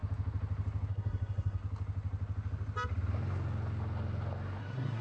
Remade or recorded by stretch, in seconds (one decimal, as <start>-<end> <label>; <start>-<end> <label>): 0.0-0.9 recorded; 0.9-1.6 remade; 1.6-4.6 recorded; 4.6-5.0 remade